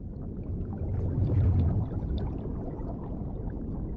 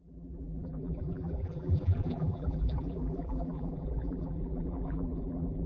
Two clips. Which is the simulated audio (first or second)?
second